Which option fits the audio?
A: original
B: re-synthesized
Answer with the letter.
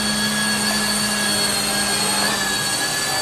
A